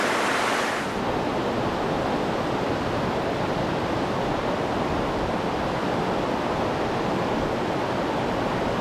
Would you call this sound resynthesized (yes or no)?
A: no